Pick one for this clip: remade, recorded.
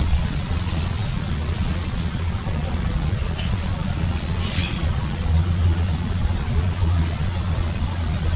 remade